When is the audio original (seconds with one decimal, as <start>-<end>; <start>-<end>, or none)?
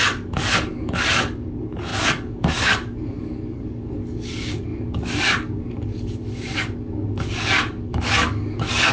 none